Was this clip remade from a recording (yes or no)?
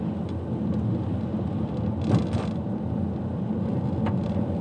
no